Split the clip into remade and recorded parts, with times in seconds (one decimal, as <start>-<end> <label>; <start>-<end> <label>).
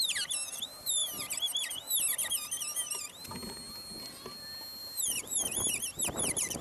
0.0-4.8 recorded; 4.8-5.7 remade; 5.7-6.6 recorded